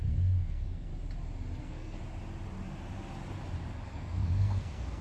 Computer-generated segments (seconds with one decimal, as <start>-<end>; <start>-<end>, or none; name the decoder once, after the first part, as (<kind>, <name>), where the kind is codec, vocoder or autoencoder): 0.0-0.9 (codec, SNAC); 1.6-2.0; 3.9-5.0